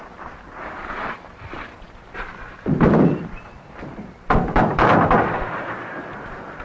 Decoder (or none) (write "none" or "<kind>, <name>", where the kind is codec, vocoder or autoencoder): vocoder, BigVGAN v2